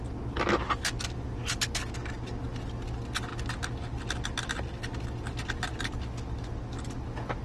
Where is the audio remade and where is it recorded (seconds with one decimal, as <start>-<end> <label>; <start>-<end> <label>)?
0.0-7.4 recorded